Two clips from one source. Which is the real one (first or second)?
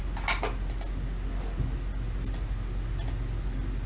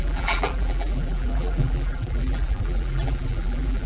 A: first